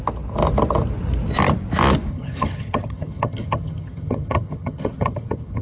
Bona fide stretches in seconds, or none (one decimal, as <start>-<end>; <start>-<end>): 0.0-2.1